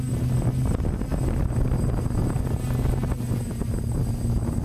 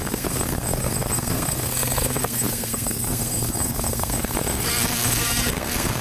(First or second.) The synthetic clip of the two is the second